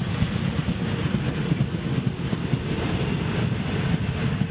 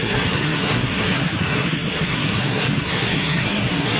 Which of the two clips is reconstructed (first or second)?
second